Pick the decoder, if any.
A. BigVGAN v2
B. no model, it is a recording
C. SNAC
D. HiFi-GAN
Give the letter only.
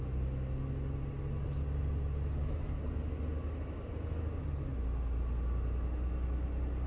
B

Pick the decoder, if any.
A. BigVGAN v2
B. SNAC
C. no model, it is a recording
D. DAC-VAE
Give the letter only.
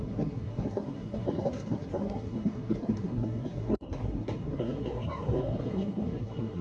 B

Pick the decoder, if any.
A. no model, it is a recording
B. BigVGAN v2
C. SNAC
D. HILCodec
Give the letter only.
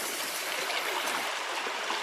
A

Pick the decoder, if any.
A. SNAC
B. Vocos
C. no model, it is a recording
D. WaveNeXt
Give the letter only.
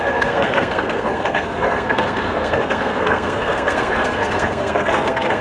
A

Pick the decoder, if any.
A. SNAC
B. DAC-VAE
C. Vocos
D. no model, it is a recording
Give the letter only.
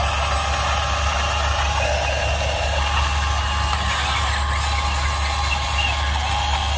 D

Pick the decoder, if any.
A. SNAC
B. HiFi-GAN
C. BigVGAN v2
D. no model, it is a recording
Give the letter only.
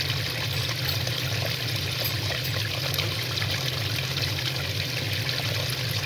D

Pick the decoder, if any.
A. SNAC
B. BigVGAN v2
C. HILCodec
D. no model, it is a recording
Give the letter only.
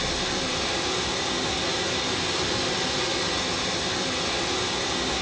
D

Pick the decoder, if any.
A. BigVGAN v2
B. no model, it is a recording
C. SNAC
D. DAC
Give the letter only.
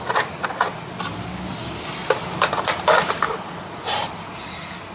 B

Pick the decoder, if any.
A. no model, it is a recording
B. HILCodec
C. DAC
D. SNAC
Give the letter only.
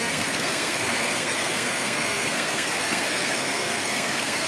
D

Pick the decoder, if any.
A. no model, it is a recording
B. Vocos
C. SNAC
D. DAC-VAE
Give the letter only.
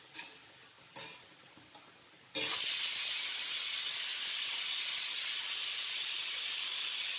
A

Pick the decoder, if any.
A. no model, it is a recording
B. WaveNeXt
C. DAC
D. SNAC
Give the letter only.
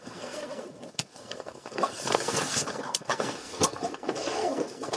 D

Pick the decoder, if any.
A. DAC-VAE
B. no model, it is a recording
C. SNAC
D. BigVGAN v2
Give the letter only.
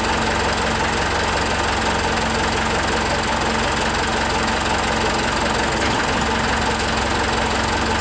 B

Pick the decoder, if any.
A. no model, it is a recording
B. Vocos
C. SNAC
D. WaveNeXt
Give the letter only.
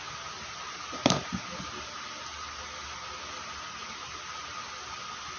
A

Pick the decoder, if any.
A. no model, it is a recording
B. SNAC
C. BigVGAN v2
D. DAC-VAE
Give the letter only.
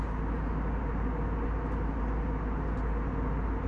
A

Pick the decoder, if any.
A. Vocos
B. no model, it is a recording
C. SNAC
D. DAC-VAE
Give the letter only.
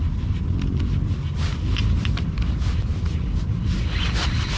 B